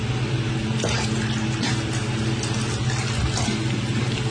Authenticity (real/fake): real